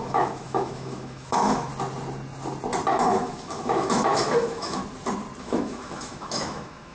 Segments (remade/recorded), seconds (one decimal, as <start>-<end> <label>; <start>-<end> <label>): 0.0-1.7 remade; 1.7-2.9 recorded; 2.9-4.8 remade; 4.8-5.4 recorded; 5.4-6.9 remade